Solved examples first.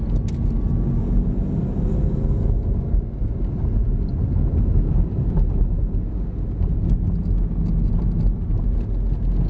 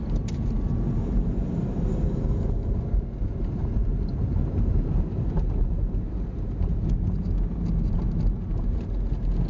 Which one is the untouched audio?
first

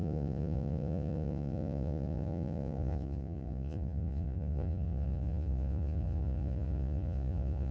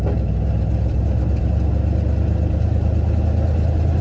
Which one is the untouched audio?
second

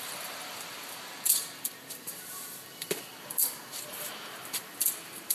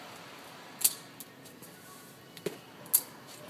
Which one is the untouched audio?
second